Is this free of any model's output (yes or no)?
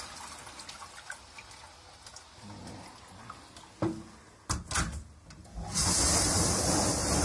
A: yes